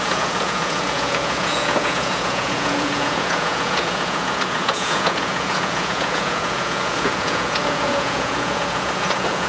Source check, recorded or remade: remade